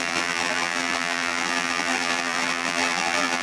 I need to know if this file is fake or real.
fake